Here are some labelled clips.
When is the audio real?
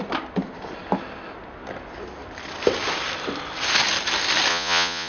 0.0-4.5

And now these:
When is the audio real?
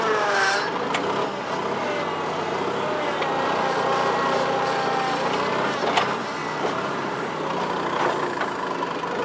0.0-6.4; 7.3-9.2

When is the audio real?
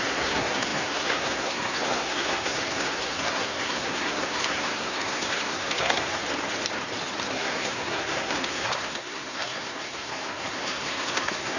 6.2-7.3